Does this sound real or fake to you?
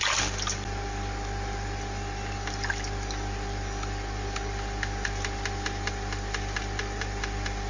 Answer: real